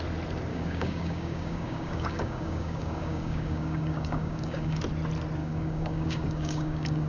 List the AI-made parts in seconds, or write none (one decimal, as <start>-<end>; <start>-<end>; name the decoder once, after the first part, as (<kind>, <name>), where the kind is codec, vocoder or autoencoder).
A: 0.5-4.8 (codec, DAC); 5.4-7.1